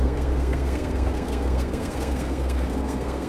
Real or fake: fake